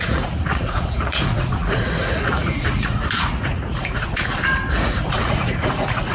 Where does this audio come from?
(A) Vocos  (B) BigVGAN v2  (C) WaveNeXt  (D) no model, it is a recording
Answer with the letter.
A